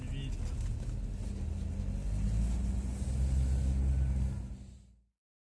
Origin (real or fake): real